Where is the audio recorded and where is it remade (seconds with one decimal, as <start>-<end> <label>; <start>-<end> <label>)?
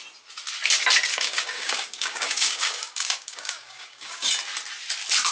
0.0-1.1 recorded; 1.1-4.3 remade; 4.3-5.3 recorded